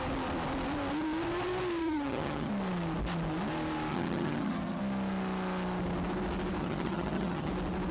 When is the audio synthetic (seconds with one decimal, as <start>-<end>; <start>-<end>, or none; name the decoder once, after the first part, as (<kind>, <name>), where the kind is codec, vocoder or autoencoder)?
1.8-2.5 (vocoder, HiFi-GAN); 3.9-4.8; 6.6-7.5

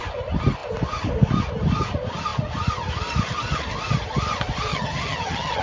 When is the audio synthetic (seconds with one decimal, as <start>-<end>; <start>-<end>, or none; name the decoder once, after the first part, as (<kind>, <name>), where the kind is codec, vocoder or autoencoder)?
4.7-5.6 (vocoder, HiFi-GAN)